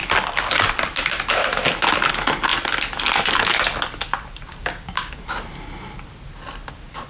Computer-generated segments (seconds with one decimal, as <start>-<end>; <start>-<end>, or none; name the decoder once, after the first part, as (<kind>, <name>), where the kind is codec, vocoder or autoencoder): 4.6-5.2 (codec, DAC)